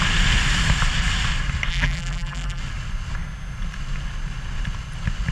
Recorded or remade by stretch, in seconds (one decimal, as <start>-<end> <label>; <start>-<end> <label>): 0.0-1.7 recorded; 1.7-2.6 remade; 2.6-5.3 recorded